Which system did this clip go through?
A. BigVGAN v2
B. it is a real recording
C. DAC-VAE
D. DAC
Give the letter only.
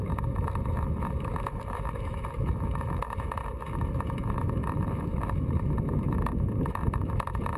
C